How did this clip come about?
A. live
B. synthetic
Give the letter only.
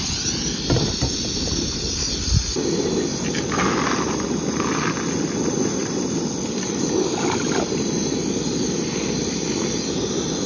A